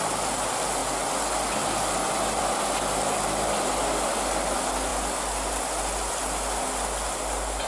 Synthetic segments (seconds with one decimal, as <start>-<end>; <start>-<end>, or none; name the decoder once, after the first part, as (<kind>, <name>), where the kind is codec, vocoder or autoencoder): none